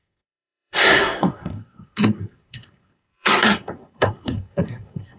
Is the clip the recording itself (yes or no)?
no